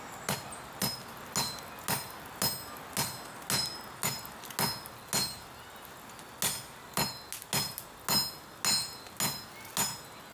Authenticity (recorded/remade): recorded